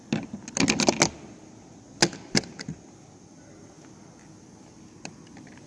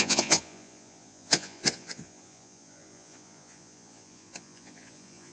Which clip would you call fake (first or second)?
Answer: second